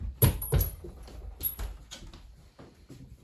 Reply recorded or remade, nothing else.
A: recorded